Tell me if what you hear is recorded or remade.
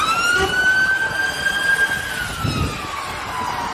recorded